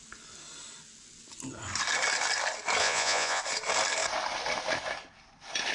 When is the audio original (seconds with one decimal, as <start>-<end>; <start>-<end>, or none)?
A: 0.0-2.8; 3.4-5.7

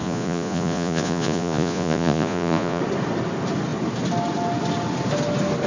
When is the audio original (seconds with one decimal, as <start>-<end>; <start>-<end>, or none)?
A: 2.8-5.7

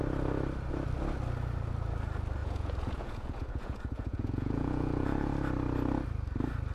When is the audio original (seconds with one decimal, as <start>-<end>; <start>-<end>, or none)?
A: 0.0-2.4; 5.3-6.7

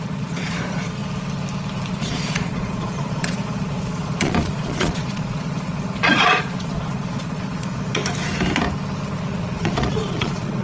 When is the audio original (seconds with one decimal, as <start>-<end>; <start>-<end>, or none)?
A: 1.0-1.9; 8.0-9.2

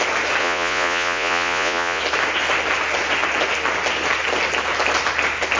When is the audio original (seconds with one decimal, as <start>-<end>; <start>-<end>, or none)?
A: 0.0-0.4; 2.0-5.6

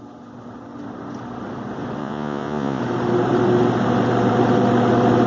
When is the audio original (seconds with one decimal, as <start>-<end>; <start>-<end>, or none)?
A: 0.0-2.0; 2.8-5.3

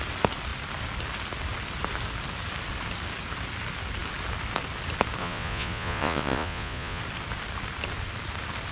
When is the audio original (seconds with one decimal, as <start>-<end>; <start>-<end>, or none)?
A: 0.0-5.2; 7.0-8.7